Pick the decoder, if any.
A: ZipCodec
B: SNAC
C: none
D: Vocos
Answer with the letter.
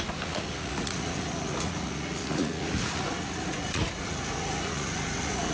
D